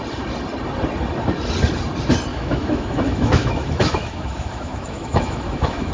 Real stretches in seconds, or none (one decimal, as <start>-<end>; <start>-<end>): 0.0-2.3

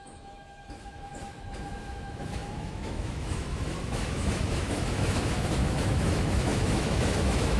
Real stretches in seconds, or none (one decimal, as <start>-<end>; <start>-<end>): none

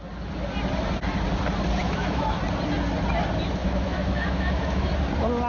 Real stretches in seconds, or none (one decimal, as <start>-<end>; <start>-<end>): 0.0-1.8; 2.4-3.6; 4.9-5.5

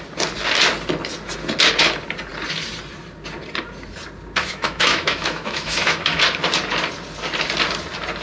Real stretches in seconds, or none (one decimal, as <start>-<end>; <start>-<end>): 0.0-4.4; 6.2-8.2

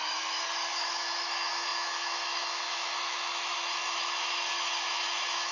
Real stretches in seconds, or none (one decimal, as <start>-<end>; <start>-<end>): none

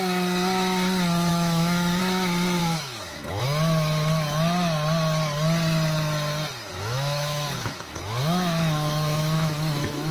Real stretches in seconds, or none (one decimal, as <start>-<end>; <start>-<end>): 0.0-1.3; 2.0-2.6; 3.4-6.7

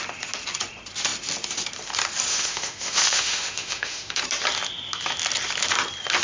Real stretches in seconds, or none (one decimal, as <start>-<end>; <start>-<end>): 0.0-2.3; 4.2-6.2